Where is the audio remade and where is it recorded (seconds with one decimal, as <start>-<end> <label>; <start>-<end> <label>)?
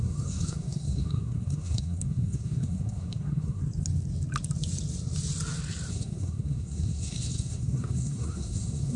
0.0-3.6 remade; 3.6-5.9 recorded; 5.9-9.0 remade